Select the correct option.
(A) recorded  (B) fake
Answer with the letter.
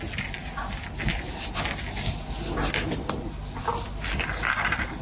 A